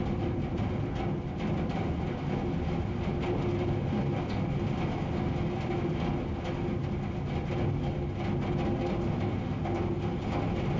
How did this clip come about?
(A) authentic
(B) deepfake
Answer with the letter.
A